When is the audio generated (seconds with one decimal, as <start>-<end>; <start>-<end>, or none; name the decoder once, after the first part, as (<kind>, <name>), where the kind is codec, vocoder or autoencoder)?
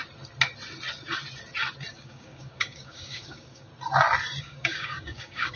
1.9-3.7 (codec, DAC); 4.4-5.6